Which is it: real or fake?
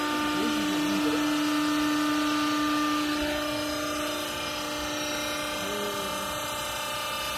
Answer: real